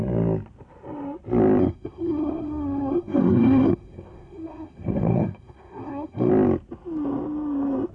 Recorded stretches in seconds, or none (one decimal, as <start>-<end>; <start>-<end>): 0.0-1.6; 6.3-7.9